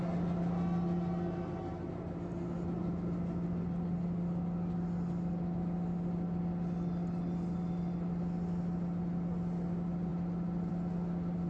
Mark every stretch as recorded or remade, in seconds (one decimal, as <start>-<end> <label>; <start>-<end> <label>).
0.0-11.5 recorded